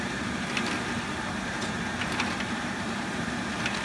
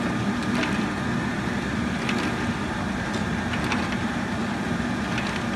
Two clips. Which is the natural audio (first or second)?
second